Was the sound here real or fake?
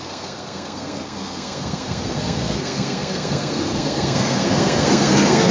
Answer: fake